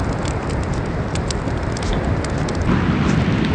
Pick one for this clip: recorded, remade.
recorded